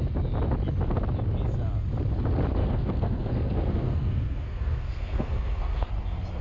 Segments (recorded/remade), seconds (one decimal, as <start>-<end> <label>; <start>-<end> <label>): 0.0-2.6 recorded; 2.6-5.9 remade; 5.9-6.4 recorded